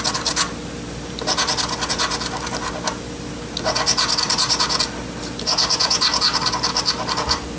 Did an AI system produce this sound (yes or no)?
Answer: no